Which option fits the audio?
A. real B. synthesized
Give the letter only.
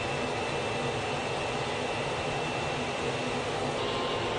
A